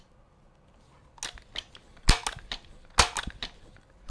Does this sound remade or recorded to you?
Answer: recorded